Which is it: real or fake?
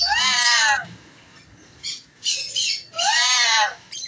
real